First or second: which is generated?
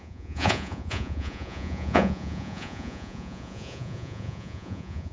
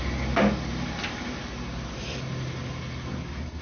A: first